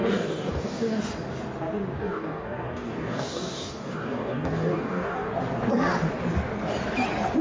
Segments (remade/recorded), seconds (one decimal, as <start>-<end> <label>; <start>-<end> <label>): 0.0-1.0 remade; 1.0-2.0 recorded; 2.0-5.3 remade; 5.3-7.4 recorded